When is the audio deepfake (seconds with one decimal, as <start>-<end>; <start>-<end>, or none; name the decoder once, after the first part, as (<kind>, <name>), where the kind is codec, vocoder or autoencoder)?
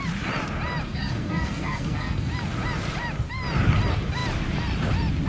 0.9-2.3 (codec, SNAC)